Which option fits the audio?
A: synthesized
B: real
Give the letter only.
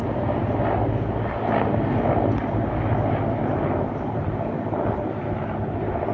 B